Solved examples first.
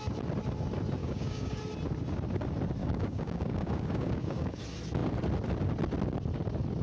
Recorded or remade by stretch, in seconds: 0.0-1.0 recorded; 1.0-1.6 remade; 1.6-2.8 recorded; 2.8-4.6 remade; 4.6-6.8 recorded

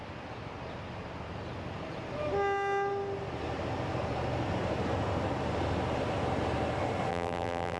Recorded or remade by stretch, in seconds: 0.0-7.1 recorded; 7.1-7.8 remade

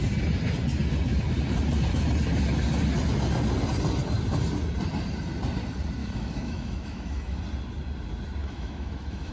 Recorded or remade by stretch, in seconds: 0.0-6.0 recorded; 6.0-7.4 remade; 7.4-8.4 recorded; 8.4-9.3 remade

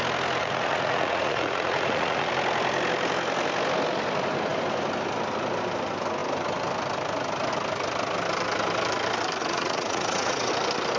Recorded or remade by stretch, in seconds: 0.0-0.4 recorded; 0.4-2.3 remade; 2.3-9.4 recorded; 9.4-10.5 remade; 10.5-11.0 recorded

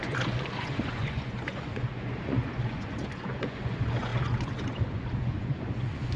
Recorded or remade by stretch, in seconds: 0.0-6.2 remade

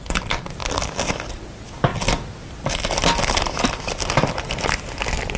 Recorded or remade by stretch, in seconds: 0.0-5.4 recorded

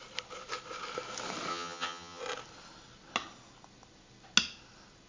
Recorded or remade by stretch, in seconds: 0.0-1.5 recorded; 1.5-2.2 remade; 2.2-5.1 recorded